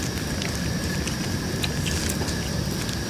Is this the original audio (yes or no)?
yes